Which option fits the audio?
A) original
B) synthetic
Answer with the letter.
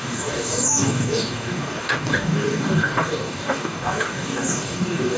B